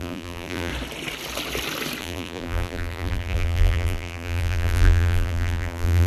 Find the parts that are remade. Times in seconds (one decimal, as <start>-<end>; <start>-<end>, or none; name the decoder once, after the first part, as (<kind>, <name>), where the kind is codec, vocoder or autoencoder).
0.0-0.7 (vocoder, BigVGAN v2); 2.0-6.1